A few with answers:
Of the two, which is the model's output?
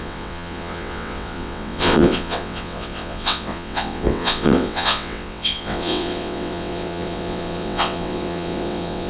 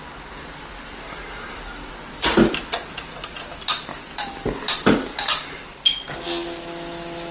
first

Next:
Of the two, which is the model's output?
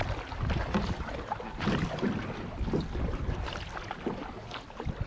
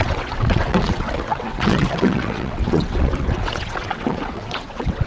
second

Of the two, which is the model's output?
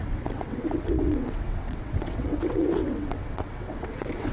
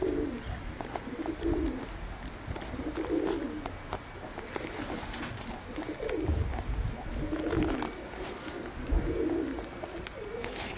first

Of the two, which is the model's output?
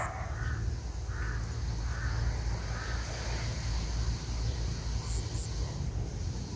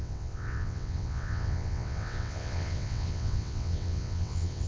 second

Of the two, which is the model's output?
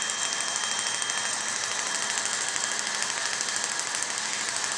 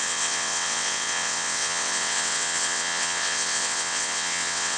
second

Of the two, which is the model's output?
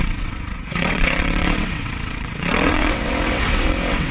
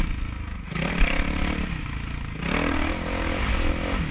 first